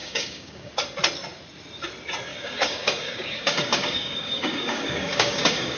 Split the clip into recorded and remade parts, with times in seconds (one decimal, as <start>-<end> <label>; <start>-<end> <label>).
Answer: 0.0-0.7 remade; 0.7-2.3 recorded; 2.3-5.8 remade